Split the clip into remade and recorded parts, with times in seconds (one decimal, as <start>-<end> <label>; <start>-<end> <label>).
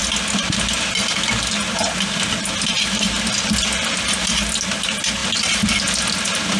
0.0-6.6 recorded